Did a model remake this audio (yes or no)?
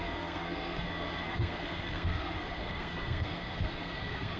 yes